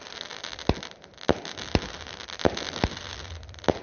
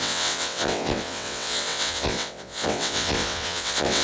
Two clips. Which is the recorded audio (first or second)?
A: first